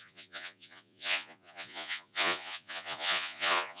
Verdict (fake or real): fake